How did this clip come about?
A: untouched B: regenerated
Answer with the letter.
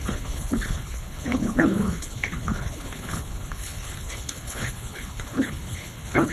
B